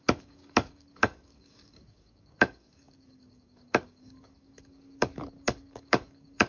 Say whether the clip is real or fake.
fake